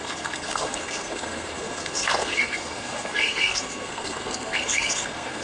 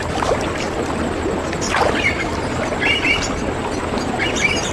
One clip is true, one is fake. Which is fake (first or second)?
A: first